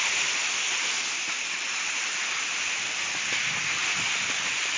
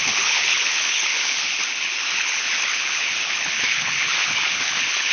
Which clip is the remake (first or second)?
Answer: second